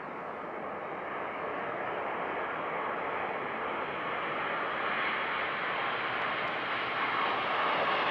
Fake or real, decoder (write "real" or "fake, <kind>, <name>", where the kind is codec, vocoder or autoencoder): real